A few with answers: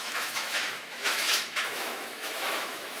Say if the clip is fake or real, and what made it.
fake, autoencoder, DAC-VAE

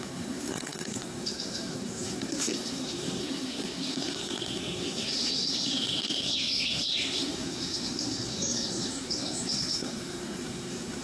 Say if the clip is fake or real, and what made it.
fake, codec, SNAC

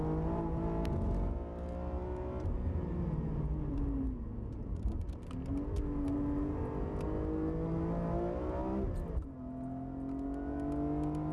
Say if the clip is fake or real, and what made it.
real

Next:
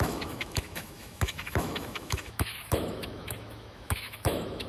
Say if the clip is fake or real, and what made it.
fake, autoencoder, DAC-VAE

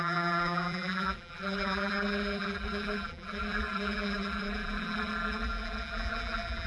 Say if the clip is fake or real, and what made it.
fake, vocoder, BigVGAN v2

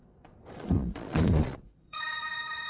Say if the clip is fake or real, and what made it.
fake, vocoder, Vocos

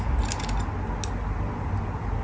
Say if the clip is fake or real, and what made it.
real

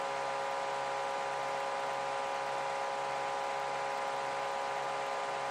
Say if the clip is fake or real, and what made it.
real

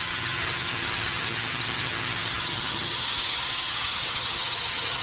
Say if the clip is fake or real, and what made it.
fake, vocoder, HiFi-GAN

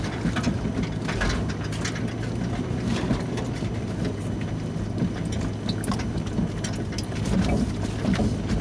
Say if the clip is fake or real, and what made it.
real